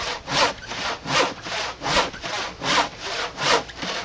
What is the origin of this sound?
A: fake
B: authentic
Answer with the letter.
B